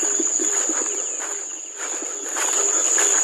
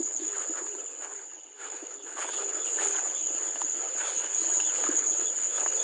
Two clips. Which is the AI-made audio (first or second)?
second